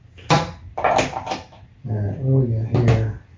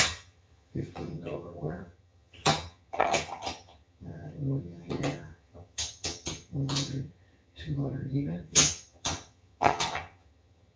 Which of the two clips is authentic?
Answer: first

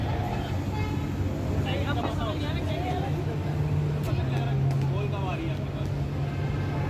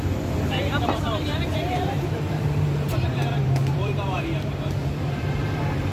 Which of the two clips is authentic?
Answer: first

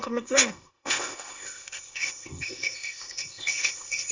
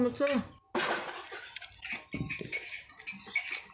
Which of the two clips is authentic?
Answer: second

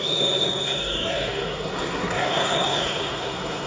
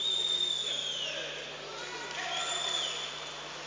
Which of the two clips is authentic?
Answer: second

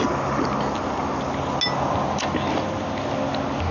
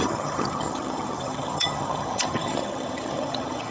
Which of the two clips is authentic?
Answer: first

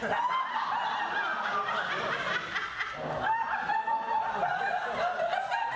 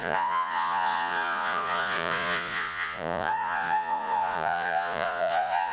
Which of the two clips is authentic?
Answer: first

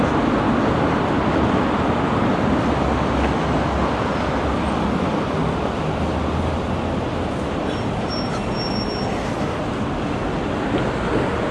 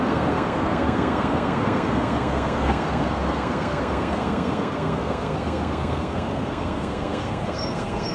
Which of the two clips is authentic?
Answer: first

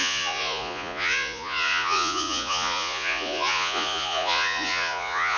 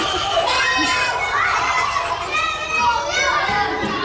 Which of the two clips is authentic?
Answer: second